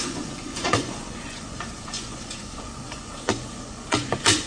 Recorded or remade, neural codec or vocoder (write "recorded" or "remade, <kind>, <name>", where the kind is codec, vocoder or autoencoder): remade, vocoder, Vocos